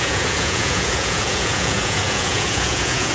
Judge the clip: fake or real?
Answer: fake